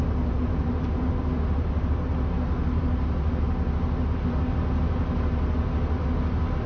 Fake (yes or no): no